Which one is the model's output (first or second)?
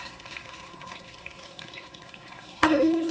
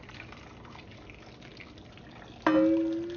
first